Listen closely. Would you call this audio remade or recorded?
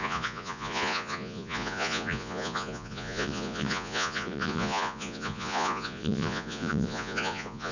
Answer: remade